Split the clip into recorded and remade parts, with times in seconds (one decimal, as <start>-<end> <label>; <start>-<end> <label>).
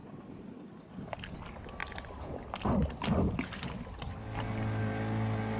0.0-0.7 remade; 0.7-1.8 recorded; 1.8-4.1 remade; 4.1-5.6 recorded